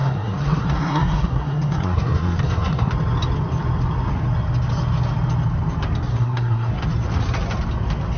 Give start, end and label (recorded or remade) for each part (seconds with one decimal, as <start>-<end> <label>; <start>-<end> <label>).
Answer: 0.0-2.9 remade; 2.9-6.1 recorded; 6.1-6.8 remade; 6.8-8.2 recorded

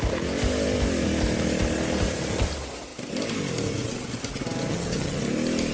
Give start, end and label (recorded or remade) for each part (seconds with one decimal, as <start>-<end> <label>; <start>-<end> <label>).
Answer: 0.0-4.7 recorded; 4.7-5.2 remade; 5.2-5.7 recorded

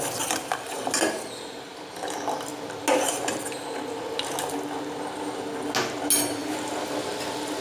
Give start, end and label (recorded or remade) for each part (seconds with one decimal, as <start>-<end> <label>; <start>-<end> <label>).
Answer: 0.0-7.6 recorded

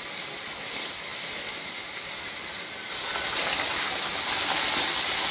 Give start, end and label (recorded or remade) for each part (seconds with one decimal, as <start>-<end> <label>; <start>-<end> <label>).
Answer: 0.0-5.3 recorded

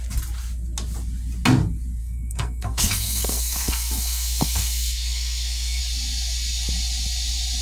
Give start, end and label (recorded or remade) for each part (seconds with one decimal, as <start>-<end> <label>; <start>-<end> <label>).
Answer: 0.0-2.0 recorded; 2.0-5.8 remade; 5.8-7.6 recorded

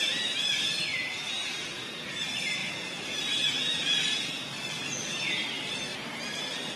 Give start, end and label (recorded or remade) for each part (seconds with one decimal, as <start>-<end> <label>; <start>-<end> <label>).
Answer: 0.0-0.9 recorded; 0.9-2.2 remade; 2.2-2.6 recorded; 2.6-4.5 remade; 4.5-6.8 recorded